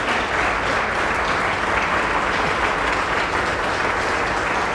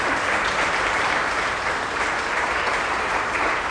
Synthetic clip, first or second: second